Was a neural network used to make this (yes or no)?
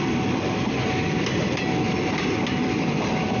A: no